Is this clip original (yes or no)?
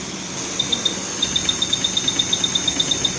yes